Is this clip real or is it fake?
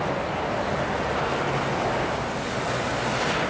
real